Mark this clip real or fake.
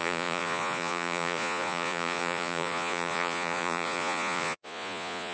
fake